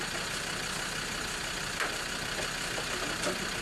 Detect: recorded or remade recorded